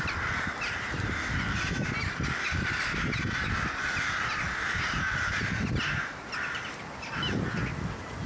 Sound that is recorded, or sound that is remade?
recorded